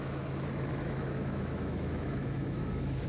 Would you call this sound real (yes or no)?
no